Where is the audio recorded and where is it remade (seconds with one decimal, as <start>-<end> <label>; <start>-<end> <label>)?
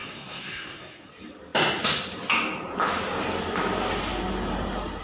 0.0-1.1 remade; 1.1-5.0 recorded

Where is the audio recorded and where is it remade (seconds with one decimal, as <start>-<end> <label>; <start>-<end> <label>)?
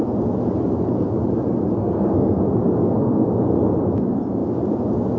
0.0-1.8 recorded; 1.8-2.4 remade; 2.4-2.8 recorded; 2.8-3.3 remade; 3.3-5.2 recorded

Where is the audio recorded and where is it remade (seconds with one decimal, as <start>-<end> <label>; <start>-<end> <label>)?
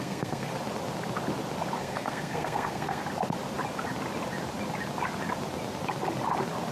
0.0-0.5 remade; 0.5-1.8 recorded; 1.8-3.0 remade; 3.0-6.7 recorded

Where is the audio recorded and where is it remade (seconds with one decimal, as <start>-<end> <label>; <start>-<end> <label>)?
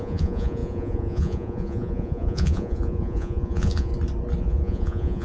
0.0-3.9 remade; 3.9-4.4 recorded; 4.4-5.2 remade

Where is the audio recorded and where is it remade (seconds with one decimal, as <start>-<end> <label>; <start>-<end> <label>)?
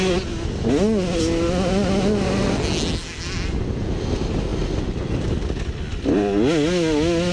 0.0-7.3 recorded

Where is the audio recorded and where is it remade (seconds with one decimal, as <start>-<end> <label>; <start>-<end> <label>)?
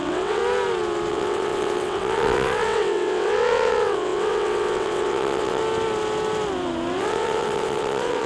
0.0-0.4 remade; 0.4-1.1 recorded; 1.1-5.6 remade; 5.6-7.0 recorded; 7.0-8.3 remade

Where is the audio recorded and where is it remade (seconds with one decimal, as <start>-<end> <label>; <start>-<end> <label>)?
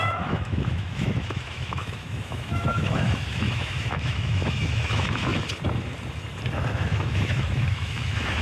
0.0-5.3 remade; 5.3-6.7 recorded; 6.7-8.4 remade